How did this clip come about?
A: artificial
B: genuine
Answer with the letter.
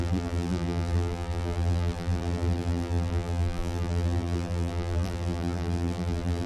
A